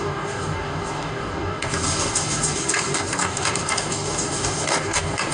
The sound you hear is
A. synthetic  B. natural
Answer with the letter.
A